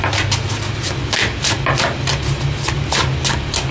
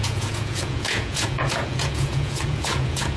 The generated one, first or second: second